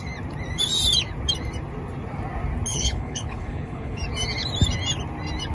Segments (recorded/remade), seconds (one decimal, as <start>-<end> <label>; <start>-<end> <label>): 0.0-2.7 recorded; 2.7-4.0 remade; 4.0-5.5 recorded